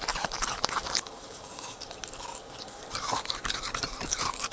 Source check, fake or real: fake